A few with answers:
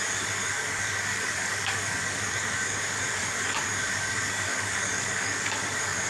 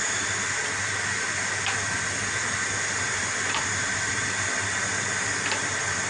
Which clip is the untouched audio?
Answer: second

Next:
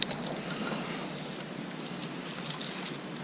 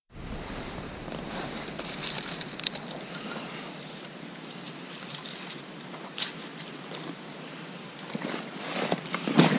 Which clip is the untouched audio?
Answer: first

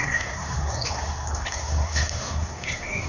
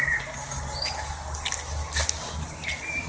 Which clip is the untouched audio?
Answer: second